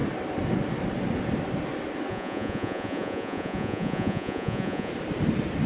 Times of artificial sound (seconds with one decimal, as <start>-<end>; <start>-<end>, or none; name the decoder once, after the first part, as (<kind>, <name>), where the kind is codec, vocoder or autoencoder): 2.1-4.9 (vocoder, Vocos)